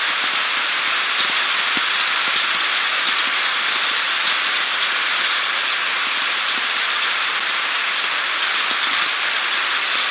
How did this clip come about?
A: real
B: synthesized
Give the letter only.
A